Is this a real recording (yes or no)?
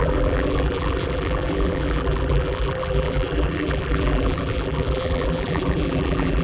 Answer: no